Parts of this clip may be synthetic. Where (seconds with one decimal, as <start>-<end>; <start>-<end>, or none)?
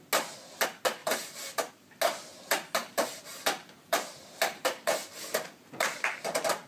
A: 1.0-1.7; 2.8-6.2